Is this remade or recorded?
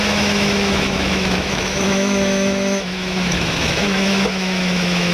remade